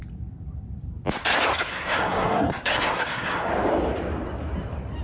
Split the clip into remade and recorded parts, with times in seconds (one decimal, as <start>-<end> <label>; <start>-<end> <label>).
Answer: 0.0-1.7 recorded; 1.7-3.5 remade; 3.5-5.0 recorded